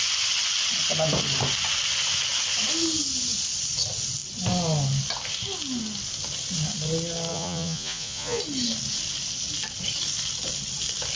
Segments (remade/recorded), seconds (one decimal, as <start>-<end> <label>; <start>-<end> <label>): 0.0-7.3 recorded; 7.3-8.4 remade; 8.4-11.2 recorded